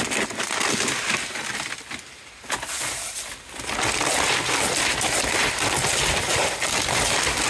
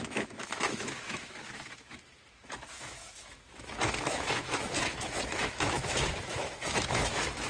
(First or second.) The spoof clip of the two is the second